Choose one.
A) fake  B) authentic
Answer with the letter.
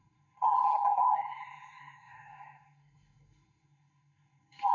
A